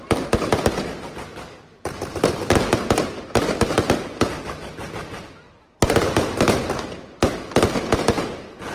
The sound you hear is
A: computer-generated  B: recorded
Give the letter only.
B